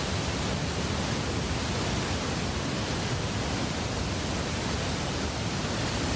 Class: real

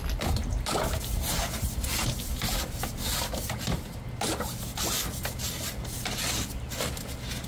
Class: real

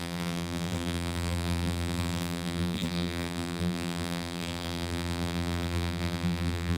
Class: fake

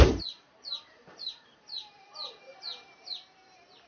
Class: fake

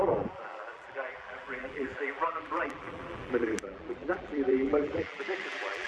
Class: fake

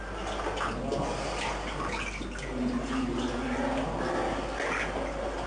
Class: real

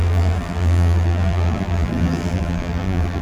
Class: fake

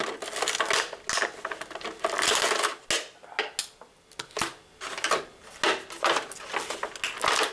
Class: real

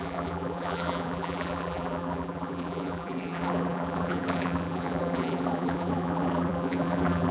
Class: fake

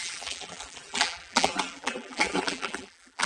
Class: fake